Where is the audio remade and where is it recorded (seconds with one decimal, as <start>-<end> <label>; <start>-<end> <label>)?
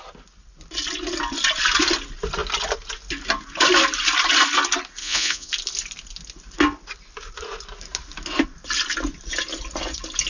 0.0-5.0 recorded; 5.0-5.5 remade; 5.5-10.3 recorded